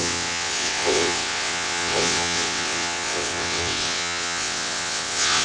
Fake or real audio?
fake